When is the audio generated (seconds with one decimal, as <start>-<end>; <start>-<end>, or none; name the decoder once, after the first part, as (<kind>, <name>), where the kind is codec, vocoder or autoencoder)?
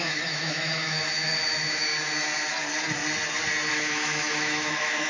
0.0-1.9 (autoencoder, DAC-VAE); 3.7-5.1